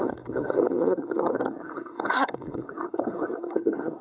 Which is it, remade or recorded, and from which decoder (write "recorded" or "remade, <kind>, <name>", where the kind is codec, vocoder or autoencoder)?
remade, codec, SNAC